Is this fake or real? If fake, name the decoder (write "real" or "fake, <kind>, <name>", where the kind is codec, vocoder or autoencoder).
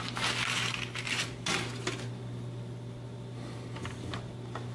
real